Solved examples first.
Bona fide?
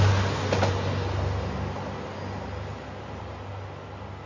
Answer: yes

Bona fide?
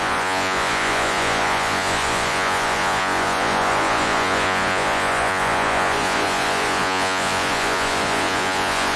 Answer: no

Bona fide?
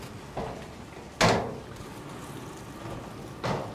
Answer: yes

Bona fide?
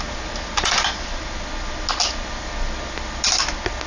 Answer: yes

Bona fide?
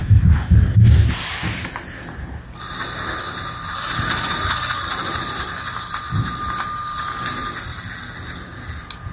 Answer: yes